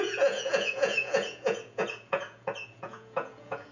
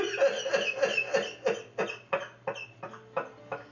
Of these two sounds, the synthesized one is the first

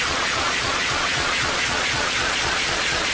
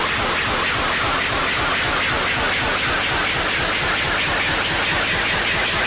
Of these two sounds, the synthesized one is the first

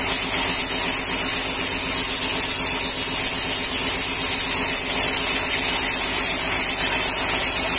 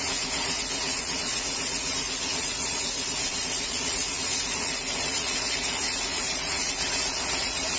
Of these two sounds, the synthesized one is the second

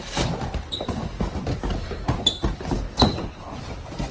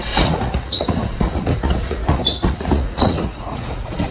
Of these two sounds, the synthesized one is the second